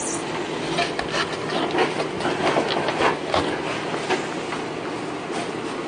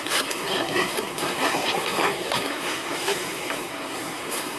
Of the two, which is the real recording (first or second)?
first